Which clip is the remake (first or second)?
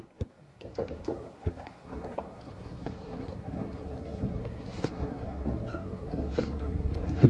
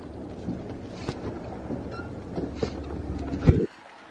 first